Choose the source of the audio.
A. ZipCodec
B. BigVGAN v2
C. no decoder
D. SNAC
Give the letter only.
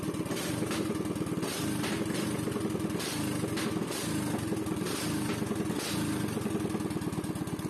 C